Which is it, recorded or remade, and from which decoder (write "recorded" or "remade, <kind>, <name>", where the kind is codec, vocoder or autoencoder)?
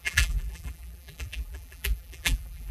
remade, vocoder, BigVGAN v2